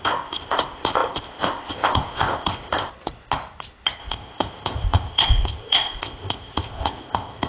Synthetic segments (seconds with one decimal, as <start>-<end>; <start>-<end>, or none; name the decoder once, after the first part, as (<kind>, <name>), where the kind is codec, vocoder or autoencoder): 0.0-2.9 (codec, ZipCodec); 4.0-7.5